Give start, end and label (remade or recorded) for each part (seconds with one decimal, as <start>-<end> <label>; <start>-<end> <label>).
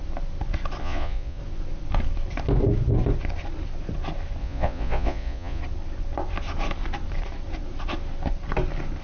0.0-0.8 recorded; 0.8-1.4 remade; 1.4-4.4 recorded; 4.4-5.6 remade; 5.6-9.0 recorded